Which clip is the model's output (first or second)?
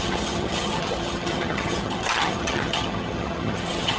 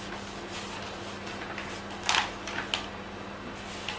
first